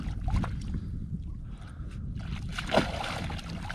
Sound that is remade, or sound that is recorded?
recorded